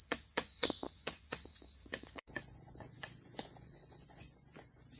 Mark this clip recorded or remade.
remade